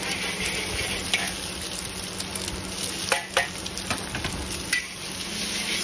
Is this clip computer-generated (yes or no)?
no